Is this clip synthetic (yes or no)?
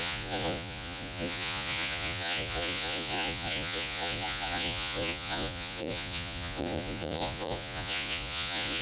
yes